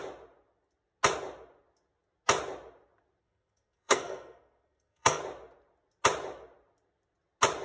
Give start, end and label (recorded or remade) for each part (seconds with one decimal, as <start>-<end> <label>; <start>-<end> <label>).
0.0-3.2 recorded; 3.2-5.2 remade; 5.2-7.6 recorded